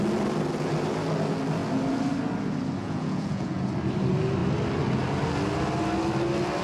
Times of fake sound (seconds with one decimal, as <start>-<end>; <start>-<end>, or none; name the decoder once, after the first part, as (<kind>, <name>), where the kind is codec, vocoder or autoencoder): 2.8-3.7 (vocoder, Vocos)